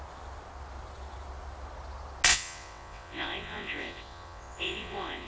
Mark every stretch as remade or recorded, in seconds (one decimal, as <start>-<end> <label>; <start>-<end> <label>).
0.0-2.3 recorded; 2.3-5.3 remade